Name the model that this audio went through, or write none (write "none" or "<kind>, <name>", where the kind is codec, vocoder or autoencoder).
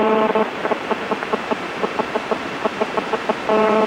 vocoder, BigVGAN v2